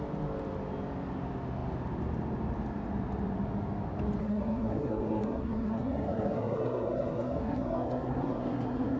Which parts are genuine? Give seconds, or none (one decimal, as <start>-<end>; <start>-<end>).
0.0-4.2